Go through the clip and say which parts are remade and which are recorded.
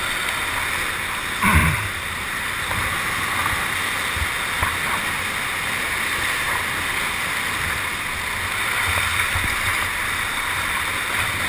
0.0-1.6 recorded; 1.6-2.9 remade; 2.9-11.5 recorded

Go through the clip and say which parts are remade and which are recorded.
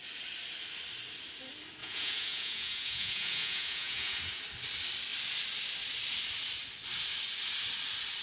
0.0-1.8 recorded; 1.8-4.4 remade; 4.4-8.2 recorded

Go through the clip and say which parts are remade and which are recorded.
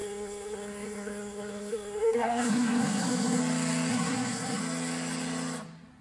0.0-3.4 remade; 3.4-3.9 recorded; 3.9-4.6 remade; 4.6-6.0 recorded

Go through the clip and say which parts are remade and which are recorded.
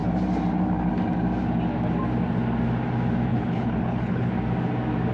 0.0-3.3 recorded; 3.3-4.3 remade; 4.3-5.1 recorded